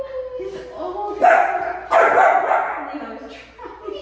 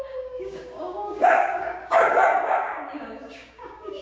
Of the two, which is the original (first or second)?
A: first